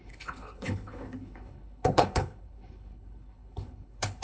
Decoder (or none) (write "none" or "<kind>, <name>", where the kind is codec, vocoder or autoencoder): codec, HILCodec